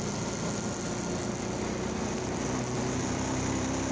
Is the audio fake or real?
real